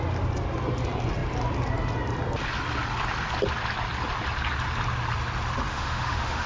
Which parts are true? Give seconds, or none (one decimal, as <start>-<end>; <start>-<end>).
0.0-5.7